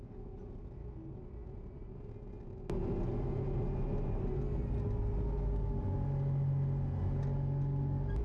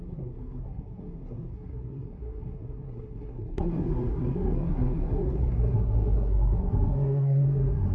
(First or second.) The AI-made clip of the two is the second